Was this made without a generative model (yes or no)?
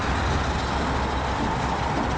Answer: yes